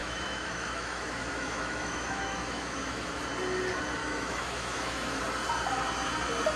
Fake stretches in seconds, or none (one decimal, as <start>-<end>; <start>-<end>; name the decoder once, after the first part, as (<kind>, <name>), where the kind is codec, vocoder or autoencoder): 0.0-3.2 (autoencoder, DAC-VAE); 4.0-5.2